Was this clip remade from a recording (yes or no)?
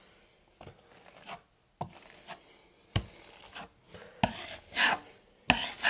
no